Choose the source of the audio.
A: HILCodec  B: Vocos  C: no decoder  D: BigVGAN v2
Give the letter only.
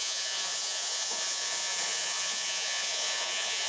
B